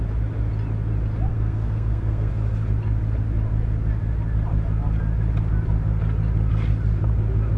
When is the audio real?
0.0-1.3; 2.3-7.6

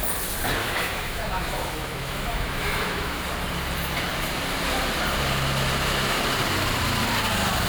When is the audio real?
0.0-0.6; 3.2-7.7

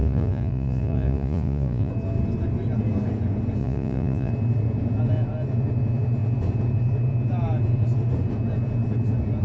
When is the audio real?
1.9-3.6; 4.3-9.4